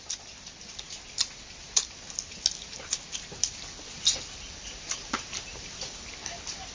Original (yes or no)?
yes